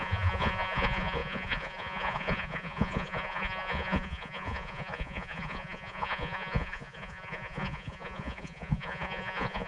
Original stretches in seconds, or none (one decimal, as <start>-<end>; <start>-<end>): none